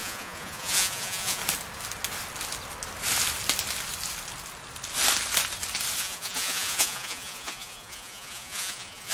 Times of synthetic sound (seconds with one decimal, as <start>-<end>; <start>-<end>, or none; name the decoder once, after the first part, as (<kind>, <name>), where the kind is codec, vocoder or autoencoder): 0.0-1.4 (vocoder, Vocos); 6.0-9.1